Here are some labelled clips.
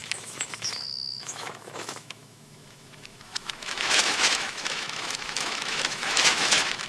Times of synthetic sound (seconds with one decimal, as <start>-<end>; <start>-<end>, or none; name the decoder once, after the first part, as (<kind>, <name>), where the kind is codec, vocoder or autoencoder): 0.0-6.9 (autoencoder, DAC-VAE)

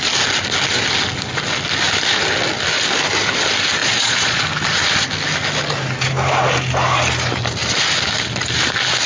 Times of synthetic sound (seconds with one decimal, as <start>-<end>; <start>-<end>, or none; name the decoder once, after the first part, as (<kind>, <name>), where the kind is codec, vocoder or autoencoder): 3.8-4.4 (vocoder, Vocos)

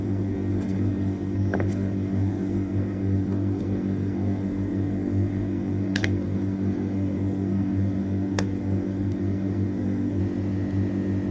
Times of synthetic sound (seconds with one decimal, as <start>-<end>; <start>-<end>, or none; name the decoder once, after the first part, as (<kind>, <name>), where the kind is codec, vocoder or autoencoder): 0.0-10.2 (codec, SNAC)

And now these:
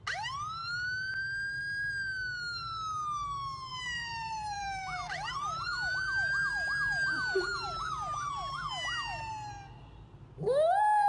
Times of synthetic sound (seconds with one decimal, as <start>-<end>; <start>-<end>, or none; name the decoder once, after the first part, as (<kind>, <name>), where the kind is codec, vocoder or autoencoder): 3.7-8.7 (vocoder, BigVGAN v2)

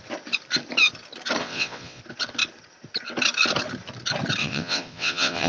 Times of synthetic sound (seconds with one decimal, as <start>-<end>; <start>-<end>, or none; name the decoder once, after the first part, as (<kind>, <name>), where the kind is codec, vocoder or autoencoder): 1.4-2.0 (vocoder, WaveNeXt); 4.4-5.5